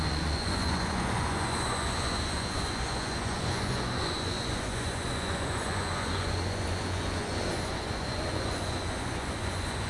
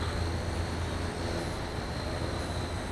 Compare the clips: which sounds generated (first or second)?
first